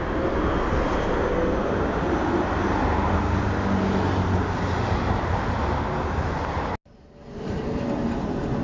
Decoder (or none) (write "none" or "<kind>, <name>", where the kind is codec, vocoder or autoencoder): none